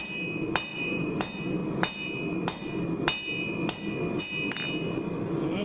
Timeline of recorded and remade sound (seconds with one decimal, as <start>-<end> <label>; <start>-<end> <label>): 0.0-0.7 recorded; 0.7-1.2 remade; 1.2-5.6 recorded